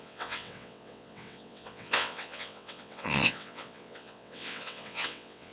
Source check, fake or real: fake